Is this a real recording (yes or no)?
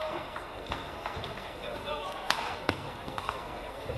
no